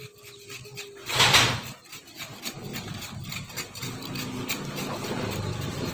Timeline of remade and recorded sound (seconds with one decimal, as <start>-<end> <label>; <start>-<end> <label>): 0.0-5.9 recorded